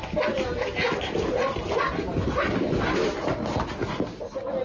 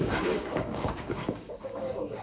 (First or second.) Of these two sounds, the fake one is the second